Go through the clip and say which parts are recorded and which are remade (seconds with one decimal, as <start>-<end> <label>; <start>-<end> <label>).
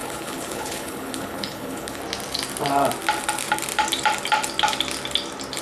0.0-2.0 remade; 2.0-5.6 recorded